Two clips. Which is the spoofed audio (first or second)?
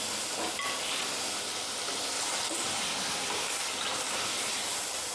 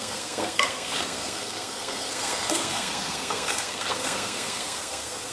second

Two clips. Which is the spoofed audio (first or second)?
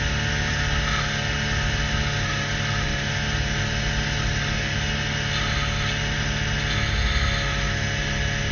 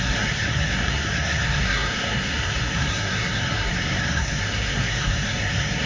second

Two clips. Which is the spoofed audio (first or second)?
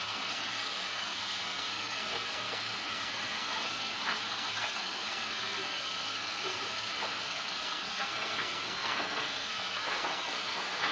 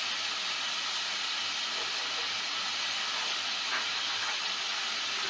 first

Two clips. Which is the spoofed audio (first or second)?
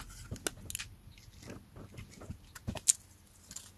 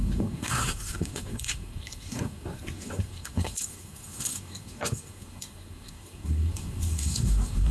second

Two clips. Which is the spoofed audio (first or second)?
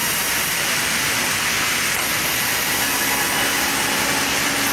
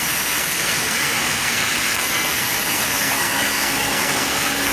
second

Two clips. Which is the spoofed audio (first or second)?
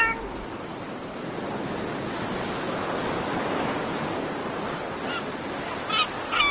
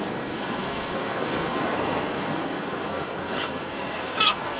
second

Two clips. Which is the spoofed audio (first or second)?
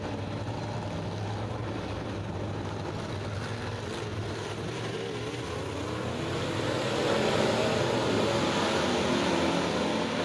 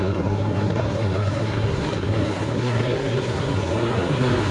second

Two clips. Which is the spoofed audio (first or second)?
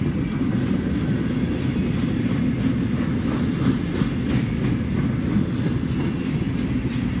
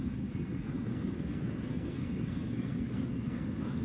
second